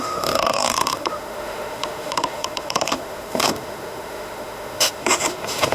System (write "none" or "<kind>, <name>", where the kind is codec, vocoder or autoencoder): autoencoder, DAC-VAE